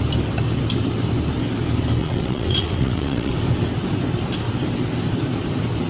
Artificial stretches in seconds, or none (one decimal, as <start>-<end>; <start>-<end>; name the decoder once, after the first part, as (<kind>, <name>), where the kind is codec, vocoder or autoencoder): 2.0-3.3 (vocoder, WaveNeXt)